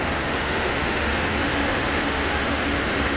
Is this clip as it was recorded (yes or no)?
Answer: no